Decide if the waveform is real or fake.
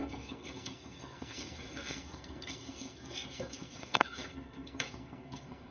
fake